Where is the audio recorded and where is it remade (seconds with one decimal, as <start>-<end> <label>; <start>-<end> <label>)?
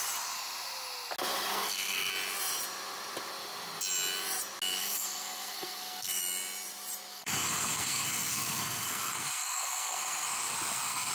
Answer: 0.0-1.5 recorded; 1.5-2.1 remade; 2.1-4.8 recorded; 4.8-6.2 remade; 6.2-7.1 recorded; 7.1-11.1 remade